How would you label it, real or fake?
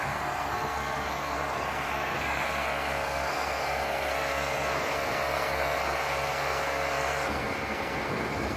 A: fake